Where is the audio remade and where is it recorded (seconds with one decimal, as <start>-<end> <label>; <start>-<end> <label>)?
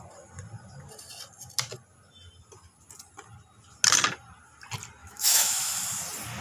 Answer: 0.0-5.0 recorded; 5.0-5.7 remade; 5.7-6.4 recorded